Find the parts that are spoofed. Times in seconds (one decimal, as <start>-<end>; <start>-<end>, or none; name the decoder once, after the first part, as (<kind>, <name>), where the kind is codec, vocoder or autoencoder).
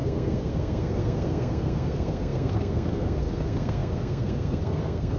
0.0-5.2 (codec, SNAC)